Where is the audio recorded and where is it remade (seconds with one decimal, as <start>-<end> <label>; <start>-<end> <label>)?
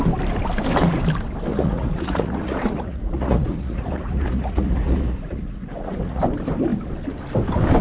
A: 0.0-1.5 recorded; 1.5-6.2 remade; 6.2-7.8 recorded